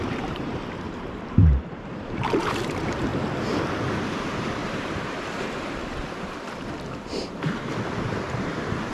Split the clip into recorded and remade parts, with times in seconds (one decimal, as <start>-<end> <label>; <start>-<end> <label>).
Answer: 0.0-3.1 remade; 3.1-3.8 recorded; 3.8-8.9 remade